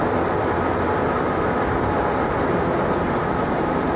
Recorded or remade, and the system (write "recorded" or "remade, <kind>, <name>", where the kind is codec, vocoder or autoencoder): recorded